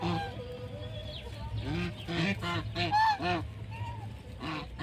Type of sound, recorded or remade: recorded